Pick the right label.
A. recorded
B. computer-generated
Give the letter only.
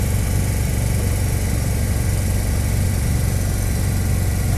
A